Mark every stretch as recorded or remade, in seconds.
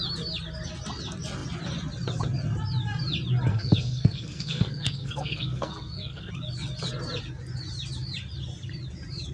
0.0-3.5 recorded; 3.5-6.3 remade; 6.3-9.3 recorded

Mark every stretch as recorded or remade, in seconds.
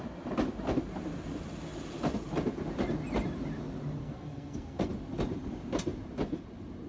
0.0-4.0 recorded; 4.0-4.9 remade; 4.9-6.9 recorded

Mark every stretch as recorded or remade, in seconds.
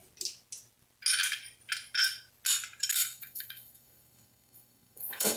0.0-2.9 recorded; 2.9-5.4 remade